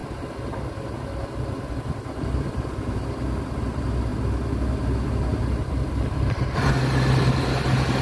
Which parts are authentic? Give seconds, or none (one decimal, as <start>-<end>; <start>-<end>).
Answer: 0.5-5.3; 6.7-8.0